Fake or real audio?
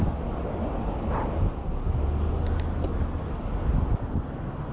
real